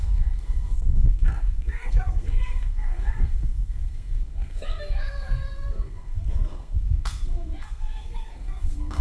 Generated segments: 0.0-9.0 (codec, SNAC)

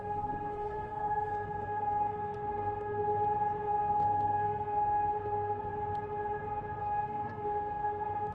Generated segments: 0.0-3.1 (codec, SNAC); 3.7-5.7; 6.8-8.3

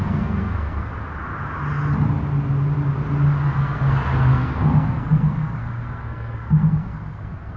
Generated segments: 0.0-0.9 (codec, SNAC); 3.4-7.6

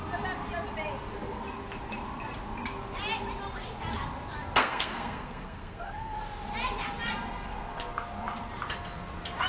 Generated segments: 4.6-6.2 (codec, SNAC)

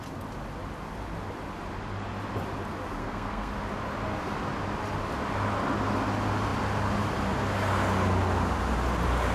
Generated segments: 3.0-3.5 (codec, SNAC)

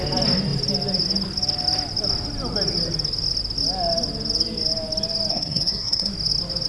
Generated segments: 5.3-6.1 (codec, SNAC)